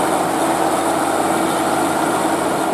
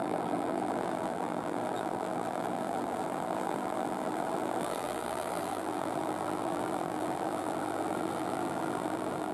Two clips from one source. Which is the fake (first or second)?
second